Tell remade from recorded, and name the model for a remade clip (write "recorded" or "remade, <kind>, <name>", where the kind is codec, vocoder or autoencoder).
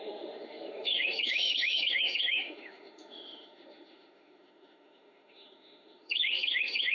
remade, autoencoder, DAC-VAE